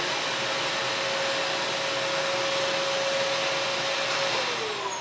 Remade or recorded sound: recorded